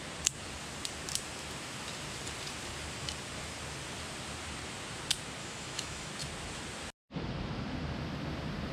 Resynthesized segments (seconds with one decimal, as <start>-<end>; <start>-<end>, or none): 5.4-6.1